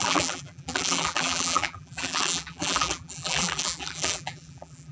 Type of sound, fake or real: fake